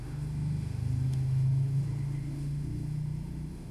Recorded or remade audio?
remade